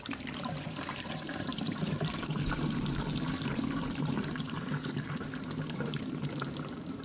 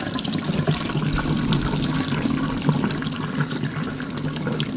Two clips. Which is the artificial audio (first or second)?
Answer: first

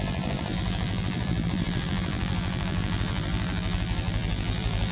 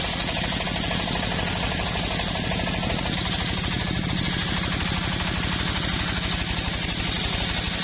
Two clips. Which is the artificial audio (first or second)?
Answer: first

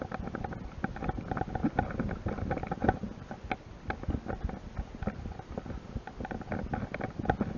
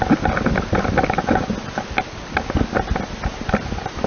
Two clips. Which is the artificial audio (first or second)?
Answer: first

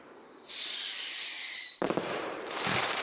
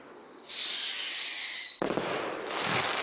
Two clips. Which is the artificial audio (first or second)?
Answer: first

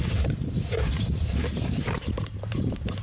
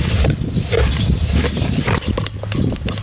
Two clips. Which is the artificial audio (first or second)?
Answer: first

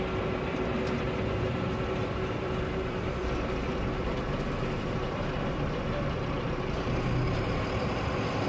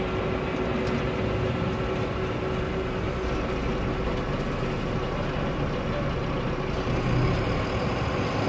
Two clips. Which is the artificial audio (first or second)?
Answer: first